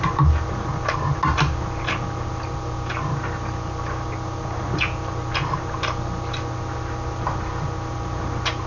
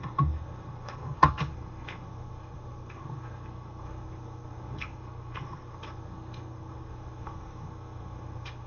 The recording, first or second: first